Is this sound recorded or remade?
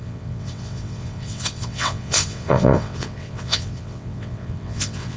remade